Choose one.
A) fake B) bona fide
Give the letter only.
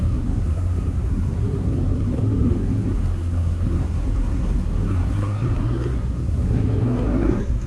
A